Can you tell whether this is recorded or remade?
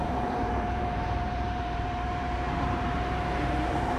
remade